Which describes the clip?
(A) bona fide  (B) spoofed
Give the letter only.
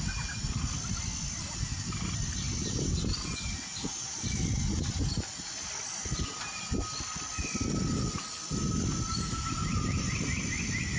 A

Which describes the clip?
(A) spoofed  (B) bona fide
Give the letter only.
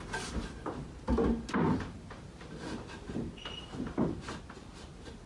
B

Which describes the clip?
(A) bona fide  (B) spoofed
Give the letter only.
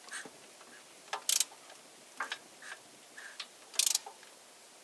A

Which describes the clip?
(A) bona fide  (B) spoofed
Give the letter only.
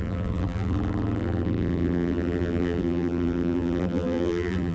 B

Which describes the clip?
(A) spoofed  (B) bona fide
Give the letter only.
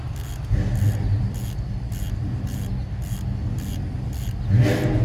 B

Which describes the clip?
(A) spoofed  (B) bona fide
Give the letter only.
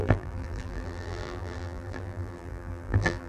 A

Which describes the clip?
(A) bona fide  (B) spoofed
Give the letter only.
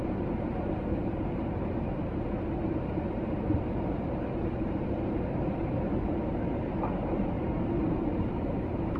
B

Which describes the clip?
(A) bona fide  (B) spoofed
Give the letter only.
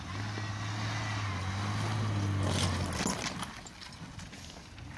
A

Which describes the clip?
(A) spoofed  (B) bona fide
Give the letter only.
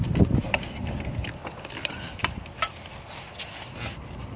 A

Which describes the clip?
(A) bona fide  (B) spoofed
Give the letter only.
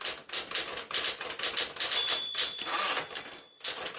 A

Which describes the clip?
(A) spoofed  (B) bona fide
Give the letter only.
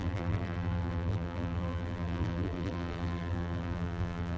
A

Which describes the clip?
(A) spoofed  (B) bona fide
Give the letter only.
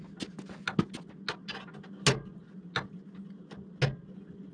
B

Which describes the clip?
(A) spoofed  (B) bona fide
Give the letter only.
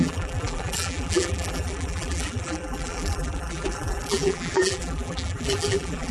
A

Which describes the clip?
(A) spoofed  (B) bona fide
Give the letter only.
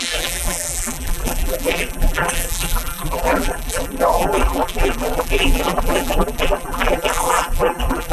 A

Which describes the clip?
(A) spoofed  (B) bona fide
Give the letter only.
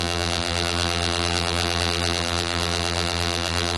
A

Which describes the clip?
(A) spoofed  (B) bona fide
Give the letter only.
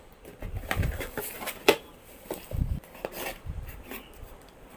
A